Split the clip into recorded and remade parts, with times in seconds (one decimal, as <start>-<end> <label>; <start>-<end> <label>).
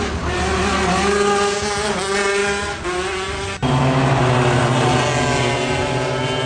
0.0-6.5 recorded